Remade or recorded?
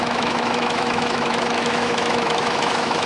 remade